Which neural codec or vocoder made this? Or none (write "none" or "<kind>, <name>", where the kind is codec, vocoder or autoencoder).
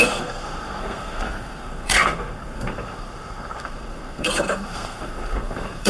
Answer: codec, SNAC